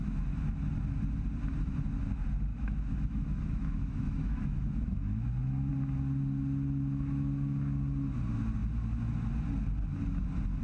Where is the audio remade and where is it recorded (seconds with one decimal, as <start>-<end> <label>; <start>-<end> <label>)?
0.0-2.5 recorded; 2.5-5.7 remade; 5.7-10.6 recorded